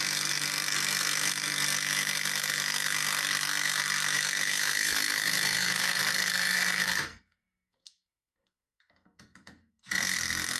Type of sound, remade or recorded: remade